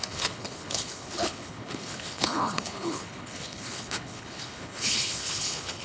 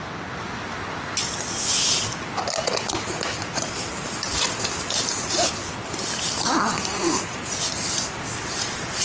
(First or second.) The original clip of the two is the second